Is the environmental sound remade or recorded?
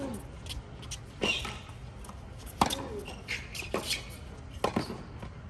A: recorded